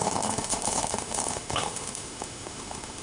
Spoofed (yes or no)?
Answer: yes